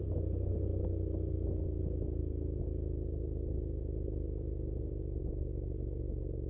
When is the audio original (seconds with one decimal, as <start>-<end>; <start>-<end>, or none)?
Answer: 0.7-1.8